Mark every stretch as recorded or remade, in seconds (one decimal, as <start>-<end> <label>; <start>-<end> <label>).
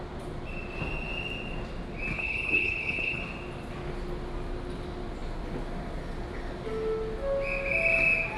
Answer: 0.0-2.1 recorded; 2.1-3.2 remade; 3.2-8.4 recorded